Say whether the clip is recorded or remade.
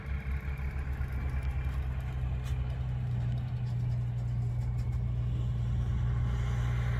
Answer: recorded